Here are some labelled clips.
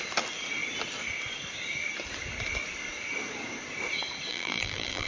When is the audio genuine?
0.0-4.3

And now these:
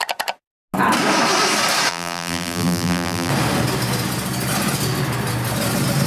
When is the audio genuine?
0.0-1.9; 3.3-6.1

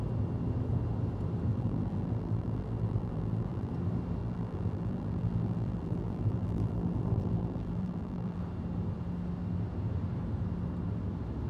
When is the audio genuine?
0.0-1.5; 3.7-4.2; 8.4-11.5

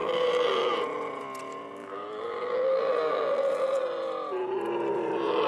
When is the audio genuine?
0.7-1.8; 3.8-5.5

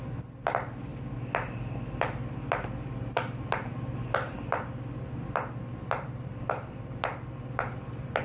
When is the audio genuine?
0.9-5.8

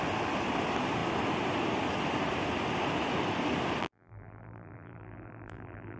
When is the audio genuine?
0.0-3.8

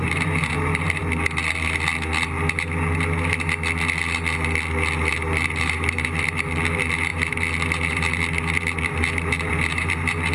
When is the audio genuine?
1.0-5.1